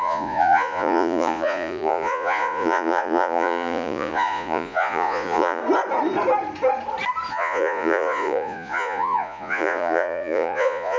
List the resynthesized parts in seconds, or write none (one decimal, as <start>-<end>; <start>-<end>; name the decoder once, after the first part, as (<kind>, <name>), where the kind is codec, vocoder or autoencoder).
0.0-5.6 (vocoder, Vocos); 7.3-11.0